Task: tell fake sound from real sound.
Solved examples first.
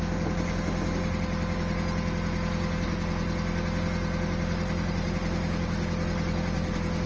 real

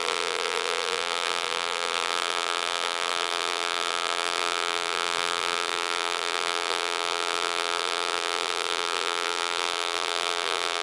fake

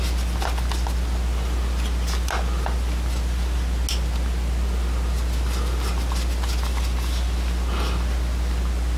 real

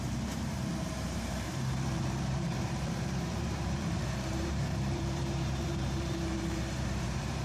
fake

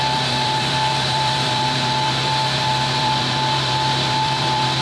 fake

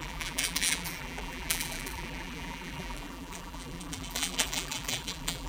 fake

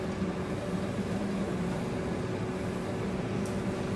real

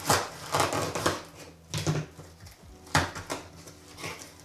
real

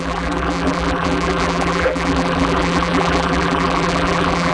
fake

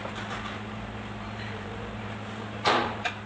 fake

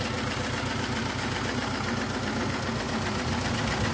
real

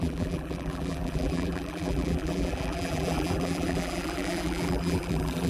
fake